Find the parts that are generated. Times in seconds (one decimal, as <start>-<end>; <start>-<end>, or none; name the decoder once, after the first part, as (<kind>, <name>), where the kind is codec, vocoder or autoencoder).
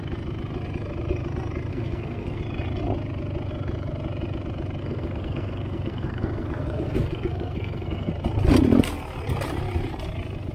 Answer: 1.7-2.4 (codec, SNAC); 4.8-8.1